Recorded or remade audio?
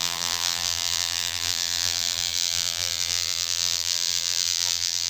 remade